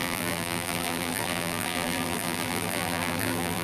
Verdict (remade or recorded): remade